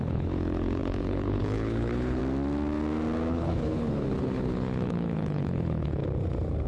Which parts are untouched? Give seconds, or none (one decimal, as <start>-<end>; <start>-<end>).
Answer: 2.2-3.3; 6.0-6.7